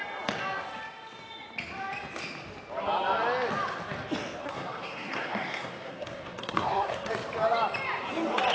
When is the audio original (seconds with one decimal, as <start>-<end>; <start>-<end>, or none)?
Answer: 0.0-4.4; 7.1-8.5